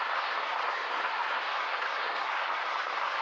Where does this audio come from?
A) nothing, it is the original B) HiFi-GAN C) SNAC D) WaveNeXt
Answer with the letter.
C